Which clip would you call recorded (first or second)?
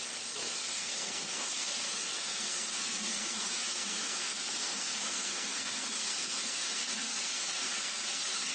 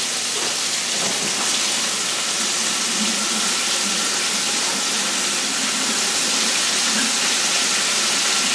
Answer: second